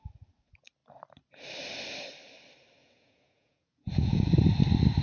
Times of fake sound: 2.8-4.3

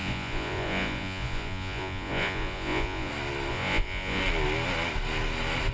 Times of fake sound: 0.0-3.1; 3.5-4.2

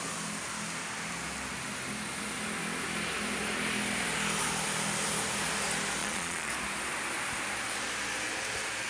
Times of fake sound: 6.0-6.5

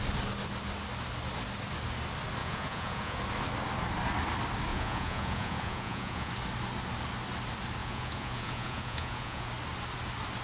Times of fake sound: 2.4-3.2; 4.7-6.3; 7.8-9.5

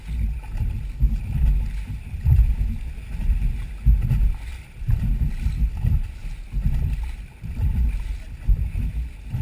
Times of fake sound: none

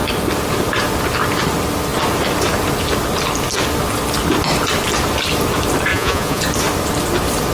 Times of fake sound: 5.9-6.4

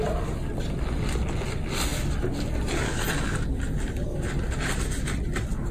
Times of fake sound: none